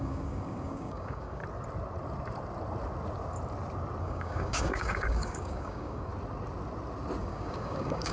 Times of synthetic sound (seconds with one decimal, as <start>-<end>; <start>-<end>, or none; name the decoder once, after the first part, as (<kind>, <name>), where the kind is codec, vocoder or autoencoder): 0.0-1.4 (codec, DAC); 4.0-6.1; 7.2-8.1